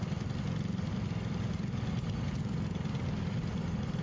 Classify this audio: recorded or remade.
recorded